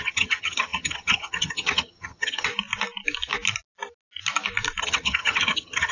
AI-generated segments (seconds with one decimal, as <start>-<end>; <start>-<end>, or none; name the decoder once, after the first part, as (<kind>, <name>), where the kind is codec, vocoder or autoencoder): 0.0-2.5 (vocoder, HiFi-GAN); 4.8-5.9